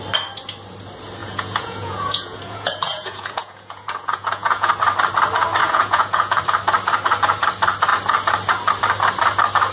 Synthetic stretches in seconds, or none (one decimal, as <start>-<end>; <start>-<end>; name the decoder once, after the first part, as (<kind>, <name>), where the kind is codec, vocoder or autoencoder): 1.2-4.7 (vocoder, Vocos); 5.6-6.4